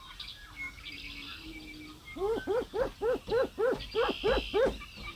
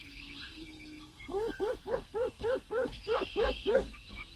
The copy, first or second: second